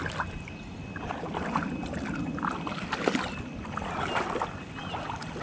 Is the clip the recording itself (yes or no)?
yes